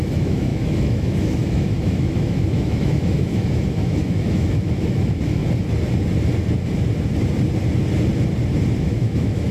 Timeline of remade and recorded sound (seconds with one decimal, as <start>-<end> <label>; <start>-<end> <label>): 0.0-5.4 remade; 5.4-8.8 recorded; 8.8-9.5 remade